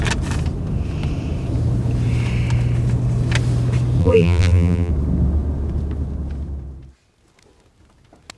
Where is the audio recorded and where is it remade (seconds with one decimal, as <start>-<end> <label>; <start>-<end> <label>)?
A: 0.0-4.0 recorded; 4.0-4.9 remade; 4.9-8.4 recorded